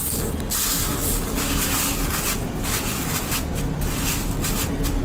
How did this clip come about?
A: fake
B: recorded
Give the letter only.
B